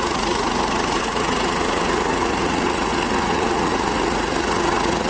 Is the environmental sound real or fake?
fake